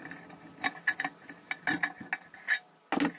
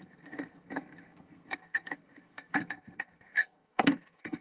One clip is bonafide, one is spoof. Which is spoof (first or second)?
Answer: second